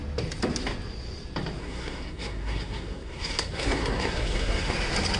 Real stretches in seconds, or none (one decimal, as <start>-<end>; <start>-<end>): 0.0-1.6; 4.7-5.2